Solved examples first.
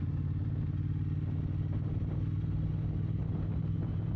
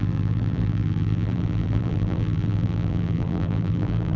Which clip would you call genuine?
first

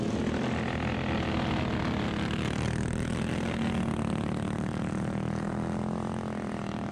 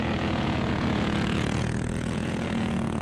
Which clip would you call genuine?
first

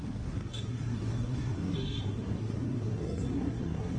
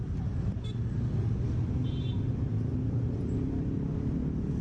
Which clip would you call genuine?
second